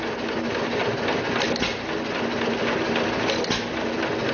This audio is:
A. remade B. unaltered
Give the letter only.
B